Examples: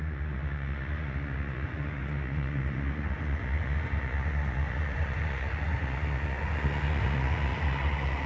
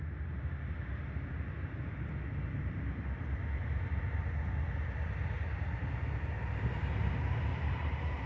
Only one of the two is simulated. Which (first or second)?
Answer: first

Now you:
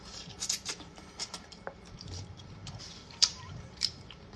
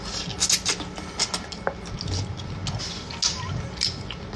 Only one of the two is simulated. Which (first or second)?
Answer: first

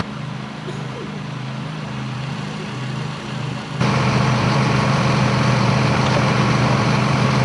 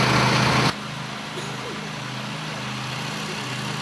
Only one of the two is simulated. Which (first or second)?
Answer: first